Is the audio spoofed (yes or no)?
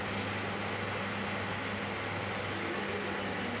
no